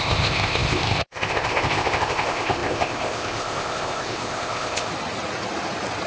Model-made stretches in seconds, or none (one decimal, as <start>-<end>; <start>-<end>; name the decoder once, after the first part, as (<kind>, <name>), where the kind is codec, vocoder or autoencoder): 0.0-4.9 (codec, ZipCodec)